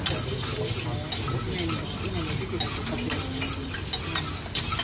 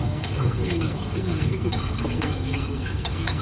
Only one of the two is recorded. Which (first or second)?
first